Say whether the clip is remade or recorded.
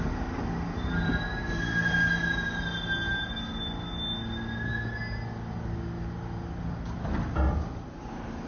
recorded